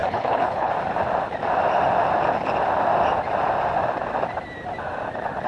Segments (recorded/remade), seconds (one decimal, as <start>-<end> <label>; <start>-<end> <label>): 0.0-0.7 remade; 0.7-5.5 recorded